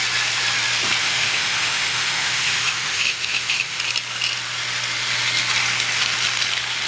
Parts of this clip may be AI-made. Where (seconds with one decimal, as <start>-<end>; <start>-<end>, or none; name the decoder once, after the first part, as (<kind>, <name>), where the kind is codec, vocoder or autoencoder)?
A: 1.0-3.8 (autoencoder, DAC-VAE)